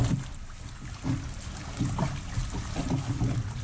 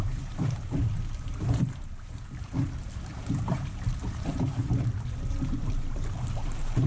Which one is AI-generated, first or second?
second